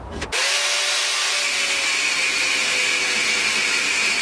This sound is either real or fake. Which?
real